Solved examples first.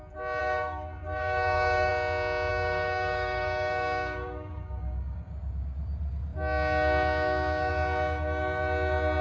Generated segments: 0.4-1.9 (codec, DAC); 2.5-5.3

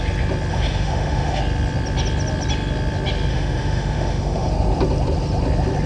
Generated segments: 0.5-1.4 (autoencoder, DAC-VAE); 3.3-4.5

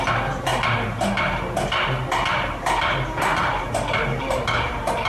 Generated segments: none

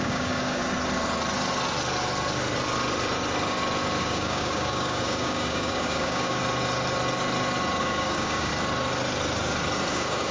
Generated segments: 0.0-0.6 (codec, DAC); 4.0-6.4; 7.8-8.5; 9.9-10.3

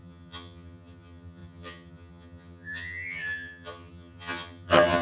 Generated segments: 0.0-5.0 (vocoder, HiFi-GAN)

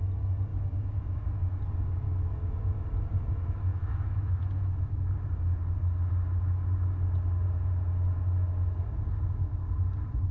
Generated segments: 0.5-1.6 (autoencoder, DAC-VAE); 3.7-5.1

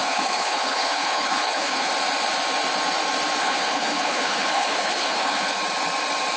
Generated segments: 0.0-1.9 (codec, HILCodec); 3.4-5.6